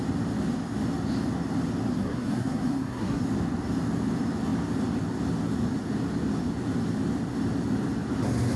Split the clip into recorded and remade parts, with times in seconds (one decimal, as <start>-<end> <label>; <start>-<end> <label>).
0.0-1.9 recorded; 1.9-3.2 remade; 3.2-8.6 recorded

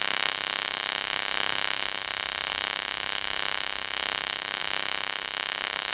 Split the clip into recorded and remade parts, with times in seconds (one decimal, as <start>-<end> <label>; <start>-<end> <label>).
0.0-2.0 remade; 2.0-2.5 recorded; 2.5-5.9 remade